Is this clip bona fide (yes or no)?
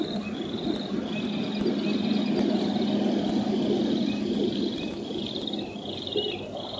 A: yes